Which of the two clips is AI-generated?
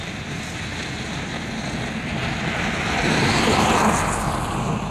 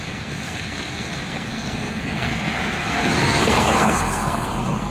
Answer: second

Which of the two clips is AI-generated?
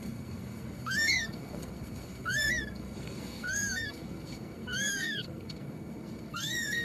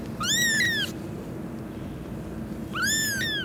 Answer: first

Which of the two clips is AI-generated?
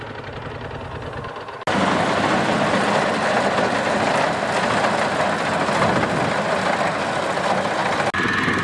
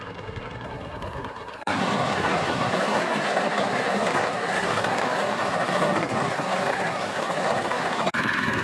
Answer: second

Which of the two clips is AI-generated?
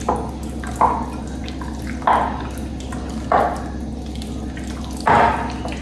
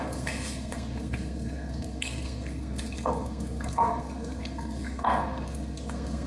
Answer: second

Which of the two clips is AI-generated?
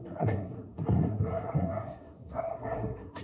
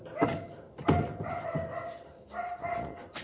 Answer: first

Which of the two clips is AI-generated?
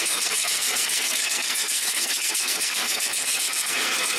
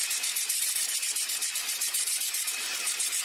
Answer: first